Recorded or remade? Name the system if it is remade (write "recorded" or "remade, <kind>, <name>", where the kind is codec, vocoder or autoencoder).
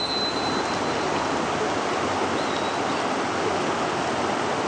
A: recorded